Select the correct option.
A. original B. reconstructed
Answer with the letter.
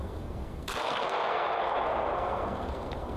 B